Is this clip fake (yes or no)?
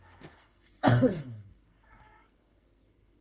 yes